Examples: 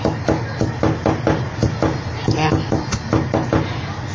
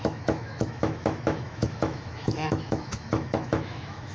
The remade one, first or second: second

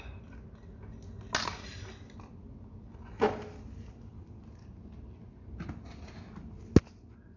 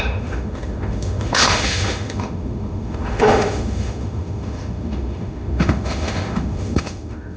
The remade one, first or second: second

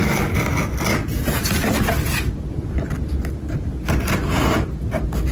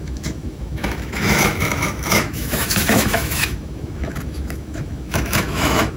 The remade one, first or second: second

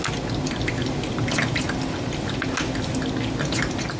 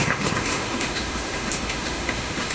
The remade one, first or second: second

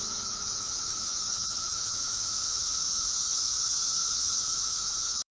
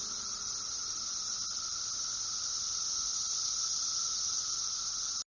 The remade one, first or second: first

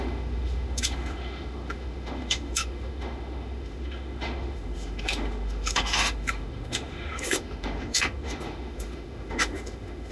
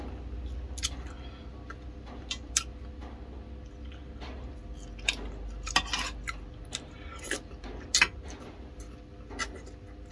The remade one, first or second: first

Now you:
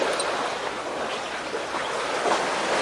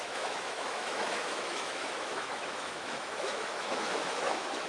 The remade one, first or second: second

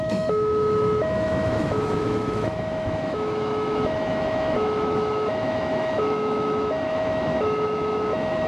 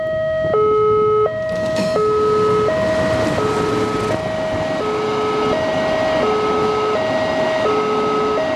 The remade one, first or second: first